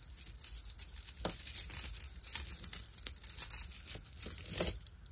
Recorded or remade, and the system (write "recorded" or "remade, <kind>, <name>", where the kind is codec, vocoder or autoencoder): recorded